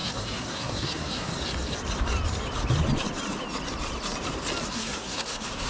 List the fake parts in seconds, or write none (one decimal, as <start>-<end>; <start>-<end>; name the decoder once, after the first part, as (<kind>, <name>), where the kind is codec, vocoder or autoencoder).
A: 0.0-1.3 (codec, SNAC); 4.7-5.7